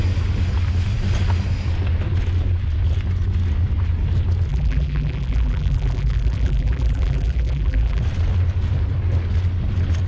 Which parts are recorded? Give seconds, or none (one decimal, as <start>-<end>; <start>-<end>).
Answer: 0.0-4.5; 8.0-10.1